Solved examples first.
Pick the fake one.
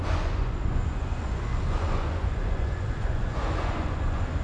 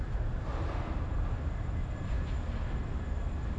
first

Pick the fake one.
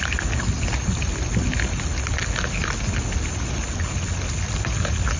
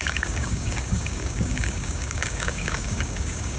second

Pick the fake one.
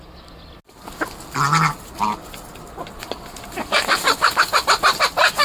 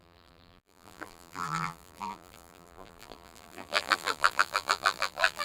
second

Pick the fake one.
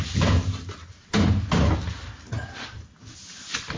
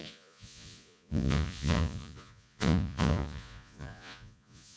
second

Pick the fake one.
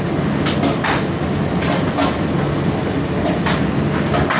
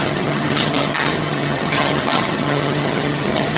second